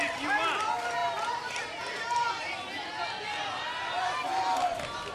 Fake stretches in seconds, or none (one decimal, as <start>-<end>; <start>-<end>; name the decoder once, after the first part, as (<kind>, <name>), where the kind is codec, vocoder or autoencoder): none

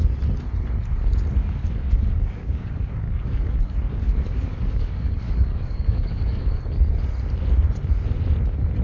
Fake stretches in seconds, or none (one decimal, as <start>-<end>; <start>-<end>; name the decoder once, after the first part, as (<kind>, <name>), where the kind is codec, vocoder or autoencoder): 1.4-6.6 (codec, DAC)

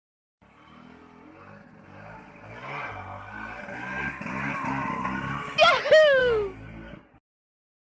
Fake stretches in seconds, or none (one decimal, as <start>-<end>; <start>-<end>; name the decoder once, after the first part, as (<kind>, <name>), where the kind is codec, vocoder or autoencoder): 6.2-7.1 (codec, DAC)

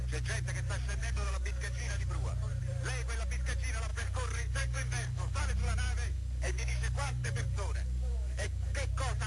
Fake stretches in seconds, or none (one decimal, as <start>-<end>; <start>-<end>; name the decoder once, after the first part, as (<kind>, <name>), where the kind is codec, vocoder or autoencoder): 1.0-2.3 (codec, DAC); 3.9-5.4; 6.1-8.9

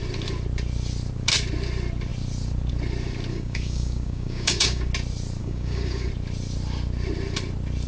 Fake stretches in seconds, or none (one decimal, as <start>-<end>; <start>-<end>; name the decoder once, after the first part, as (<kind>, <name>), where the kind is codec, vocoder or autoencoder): 3.3-4.9 (codec, DAC); 5.4-6.1